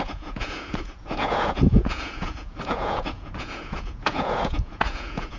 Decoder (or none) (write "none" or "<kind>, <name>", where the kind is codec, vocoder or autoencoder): vocoder, Vocos